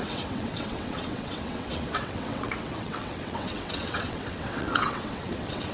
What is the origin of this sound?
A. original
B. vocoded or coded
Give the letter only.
B